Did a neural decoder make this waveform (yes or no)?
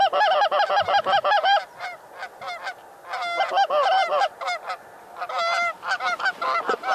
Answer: no